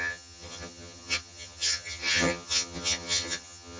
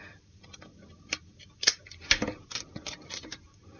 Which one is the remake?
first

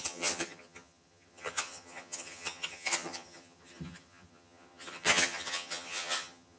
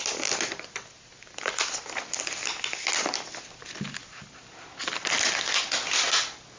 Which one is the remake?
first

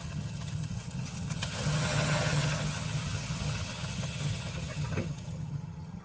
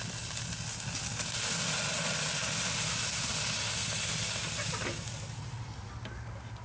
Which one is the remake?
first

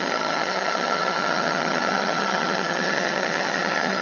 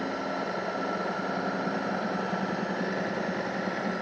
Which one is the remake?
first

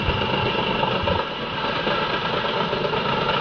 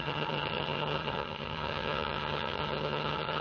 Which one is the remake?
second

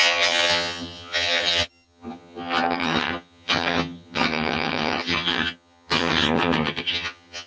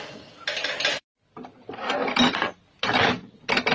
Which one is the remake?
first